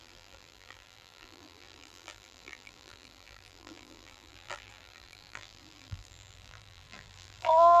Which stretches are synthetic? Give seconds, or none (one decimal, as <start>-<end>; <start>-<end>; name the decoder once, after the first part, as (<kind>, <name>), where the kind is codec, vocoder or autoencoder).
0.0-7.8 (vocoder, BigVGAN v2)